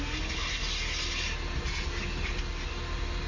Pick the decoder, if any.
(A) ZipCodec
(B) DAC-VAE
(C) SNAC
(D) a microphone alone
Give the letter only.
D